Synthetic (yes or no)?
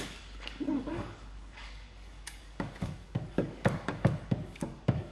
yes